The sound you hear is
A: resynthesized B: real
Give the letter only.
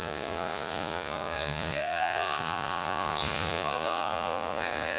A